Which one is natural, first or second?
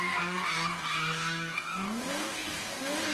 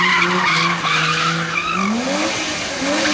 second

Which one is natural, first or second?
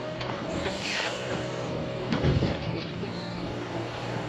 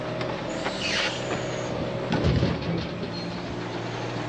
second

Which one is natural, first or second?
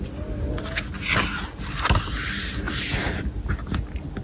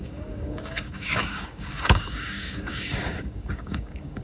first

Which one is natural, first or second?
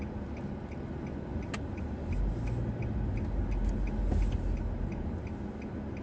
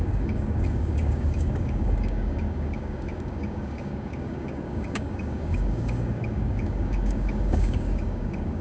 first